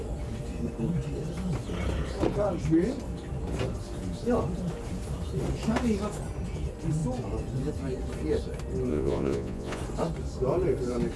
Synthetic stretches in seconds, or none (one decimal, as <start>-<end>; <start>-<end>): 8.9-9.8